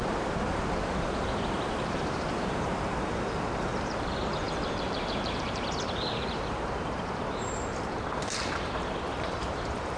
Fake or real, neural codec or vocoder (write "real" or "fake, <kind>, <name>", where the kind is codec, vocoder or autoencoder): fake, vocoder, BigVGAN v2